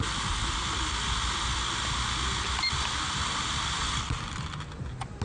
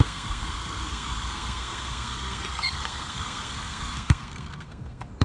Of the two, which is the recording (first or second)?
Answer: first